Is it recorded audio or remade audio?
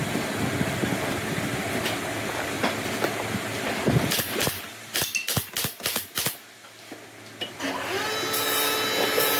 recorded